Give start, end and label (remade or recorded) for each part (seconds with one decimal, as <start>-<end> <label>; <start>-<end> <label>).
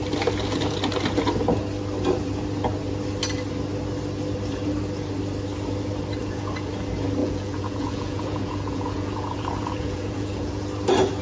0.0-6.2 recorded; 6.2-6.7 remade; 6.7-7.2 recorded; 7.2-10.5 remade; 10.5-11.2 recorded